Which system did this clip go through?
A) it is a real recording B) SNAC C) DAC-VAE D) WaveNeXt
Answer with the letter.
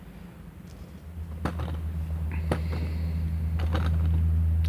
A